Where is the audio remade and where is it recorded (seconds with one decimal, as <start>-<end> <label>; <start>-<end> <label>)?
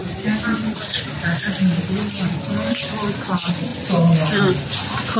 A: 0.0-5.2 recorded